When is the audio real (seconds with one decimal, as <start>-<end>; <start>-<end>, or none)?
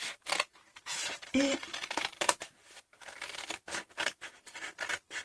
none